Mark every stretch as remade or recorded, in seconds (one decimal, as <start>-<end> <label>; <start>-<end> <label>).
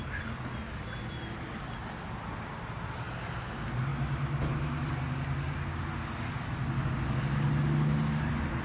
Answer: 0.0-8.6 recorded